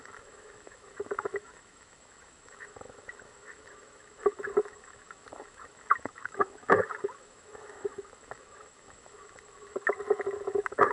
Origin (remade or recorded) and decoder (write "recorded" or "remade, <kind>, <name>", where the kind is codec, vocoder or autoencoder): remade, autoencoder, DAC-VAE